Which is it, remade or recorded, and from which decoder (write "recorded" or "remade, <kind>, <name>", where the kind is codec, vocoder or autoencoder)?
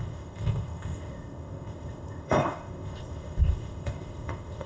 remade, codec, ZipCodec